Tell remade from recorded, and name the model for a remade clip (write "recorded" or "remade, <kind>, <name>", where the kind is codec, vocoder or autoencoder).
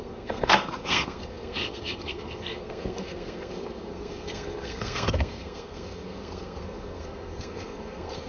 remade, codec, SNAC